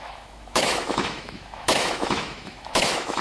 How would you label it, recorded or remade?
remade